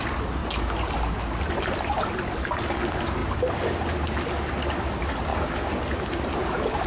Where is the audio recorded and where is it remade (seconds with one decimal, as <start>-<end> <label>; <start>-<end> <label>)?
0.0-6.9 recorded